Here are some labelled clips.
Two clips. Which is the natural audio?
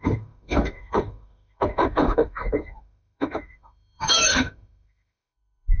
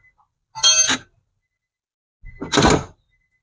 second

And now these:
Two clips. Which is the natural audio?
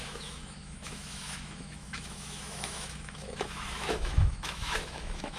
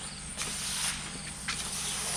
second